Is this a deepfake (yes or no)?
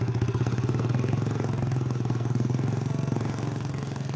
yes